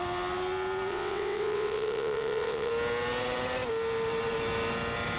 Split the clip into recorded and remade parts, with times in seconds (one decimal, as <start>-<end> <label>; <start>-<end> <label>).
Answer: 0.0-0.9 recorded; 0.9-2.7 remade; 2.7-5.2 recorded